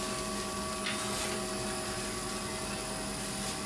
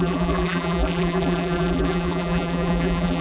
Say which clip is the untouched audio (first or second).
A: first